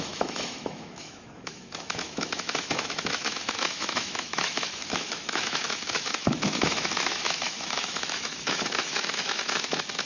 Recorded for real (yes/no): no